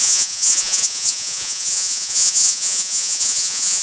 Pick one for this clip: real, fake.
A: fake